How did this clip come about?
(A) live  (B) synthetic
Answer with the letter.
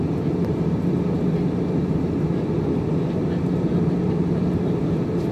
A